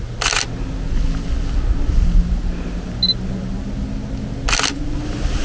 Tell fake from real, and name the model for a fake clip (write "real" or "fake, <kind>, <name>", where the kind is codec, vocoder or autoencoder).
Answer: real